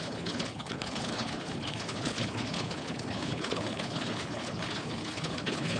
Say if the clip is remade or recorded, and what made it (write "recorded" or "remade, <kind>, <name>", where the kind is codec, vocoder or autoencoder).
remade, codec, HILCodec